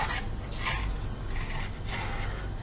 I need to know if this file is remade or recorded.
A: recorded